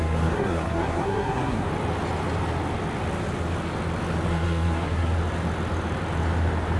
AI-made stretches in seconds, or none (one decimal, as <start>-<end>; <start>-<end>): 0.0-1.7; 4.3-5.1

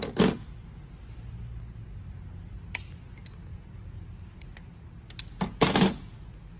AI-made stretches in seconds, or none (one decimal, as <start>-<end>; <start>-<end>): 3.5-4.9

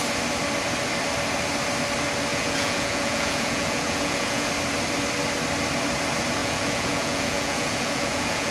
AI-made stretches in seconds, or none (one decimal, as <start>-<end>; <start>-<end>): 2.3-4.5; 6.4-8.5

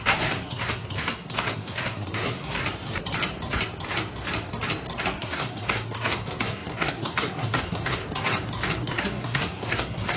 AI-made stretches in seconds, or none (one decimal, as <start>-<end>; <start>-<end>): 0.0-2.6; 5.1-8.0; 8.8-10.2